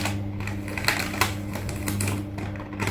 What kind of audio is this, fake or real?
real